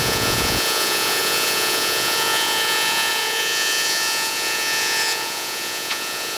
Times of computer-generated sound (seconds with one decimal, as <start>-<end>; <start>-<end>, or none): 0.0-6.4